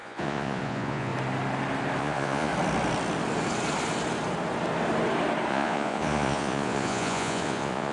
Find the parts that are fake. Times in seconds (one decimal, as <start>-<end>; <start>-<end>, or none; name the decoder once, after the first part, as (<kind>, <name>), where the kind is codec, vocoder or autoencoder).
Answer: 0.0-1.1 (vocoder, Vocos); 2.0-2.5; 5.5-7.9